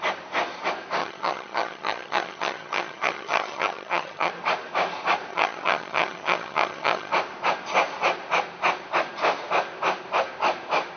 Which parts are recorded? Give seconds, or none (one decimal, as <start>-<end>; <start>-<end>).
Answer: 0.0-1.0; 4.3-5.3; 7.1-11.0